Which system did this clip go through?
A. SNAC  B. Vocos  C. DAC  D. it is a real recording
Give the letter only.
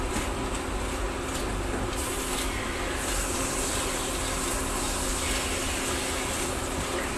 D